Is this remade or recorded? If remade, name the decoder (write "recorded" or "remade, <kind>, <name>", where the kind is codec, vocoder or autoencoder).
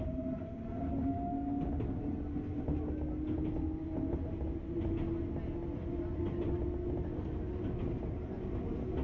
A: recorded